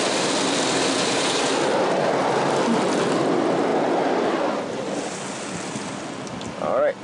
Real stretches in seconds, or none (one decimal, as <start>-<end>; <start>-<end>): 0.0-7.0